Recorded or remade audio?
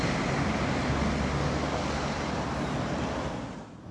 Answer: recorded